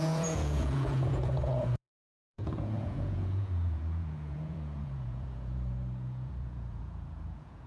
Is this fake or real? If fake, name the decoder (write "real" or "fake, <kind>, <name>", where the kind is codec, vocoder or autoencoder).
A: fake, vocoder, Vocos